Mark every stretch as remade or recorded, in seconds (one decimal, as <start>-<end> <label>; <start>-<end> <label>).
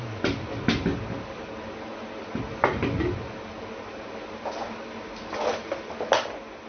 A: 0.0-6.7 recorded